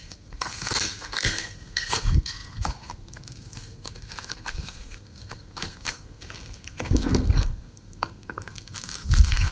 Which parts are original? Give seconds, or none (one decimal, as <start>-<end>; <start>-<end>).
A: none